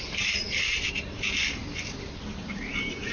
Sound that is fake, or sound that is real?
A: real